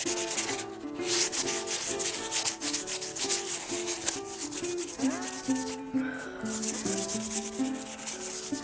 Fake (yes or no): no